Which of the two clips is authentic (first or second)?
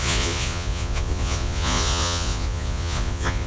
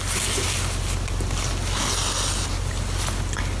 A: second